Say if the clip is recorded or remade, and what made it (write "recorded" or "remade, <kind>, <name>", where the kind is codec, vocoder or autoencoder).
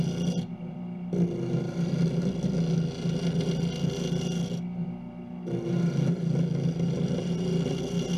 recorded